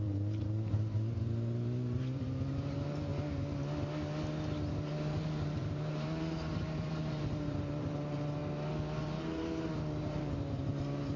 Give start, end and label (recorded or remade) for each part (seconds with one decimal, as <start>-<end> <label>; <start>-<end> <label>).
0.0-3.1 remade; 3.1-4.7 recorded; 4.7-8.4 remade; 8.4-9.0 recorded; 9.0-11.2 remade